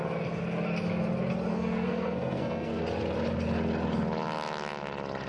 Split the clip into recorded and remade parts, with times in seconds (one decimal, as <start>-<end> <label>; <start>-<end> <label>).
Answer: 0.0-1.5 recorded; 1.5-2.8 remade; 2.8-5.3 recorded